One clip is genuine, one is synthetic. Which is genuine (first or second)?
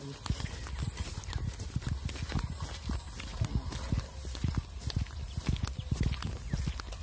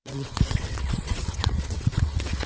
first